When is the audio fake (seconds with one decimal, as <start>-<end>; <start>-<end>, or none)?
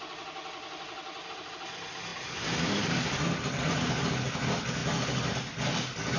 none